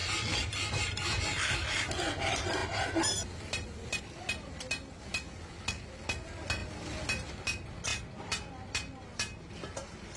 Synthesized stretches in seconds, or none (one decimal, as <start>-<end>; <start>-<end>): 0.0-0.8; 2.6-4.0; 6.6-7.3